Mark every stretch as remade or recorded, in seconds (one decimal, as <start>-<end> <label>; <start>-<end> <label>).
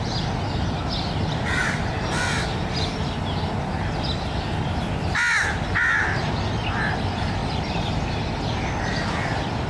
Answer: 0.0-9.7 recorded